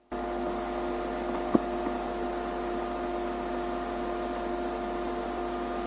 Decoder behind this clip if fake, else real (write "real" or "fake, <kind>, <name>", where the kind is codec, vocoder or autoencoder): real